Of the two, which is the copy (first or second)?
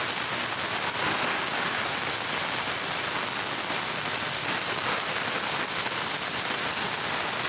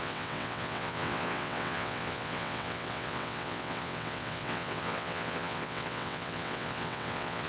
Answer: second